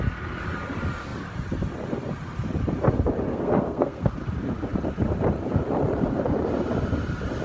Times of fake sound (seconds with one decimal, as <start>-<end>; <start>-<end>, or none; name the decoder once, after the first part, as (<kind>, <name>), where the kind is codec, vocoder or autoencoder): 3.3-4.2 (codec, SNAC)